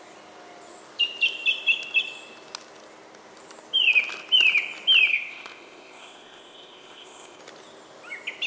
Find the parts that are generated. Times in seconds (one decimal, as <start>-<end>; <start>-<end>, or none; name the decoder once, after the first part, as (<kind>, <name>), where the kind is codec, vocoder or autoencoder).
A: 5.1-7.4 (codec, ZipCodec)